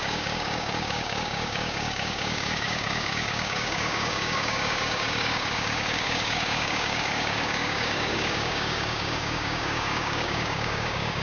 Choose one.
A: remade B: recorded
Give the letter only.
A